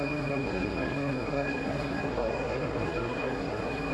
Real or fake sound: fake